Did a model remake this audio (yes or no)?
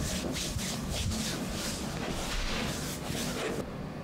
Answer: no